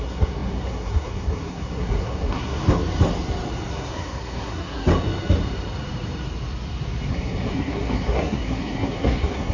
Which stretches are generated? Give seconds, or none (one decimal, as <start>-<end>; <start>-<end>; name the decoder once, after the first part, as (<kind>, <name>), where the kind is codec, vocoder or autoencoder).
0.0-2.6 (codec, SNAC); 3.7-4.9; 7.1-9.5